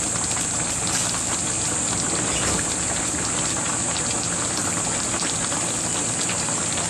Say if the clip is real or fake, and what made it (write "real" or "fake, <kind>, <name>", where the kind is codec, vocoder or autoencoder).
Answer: real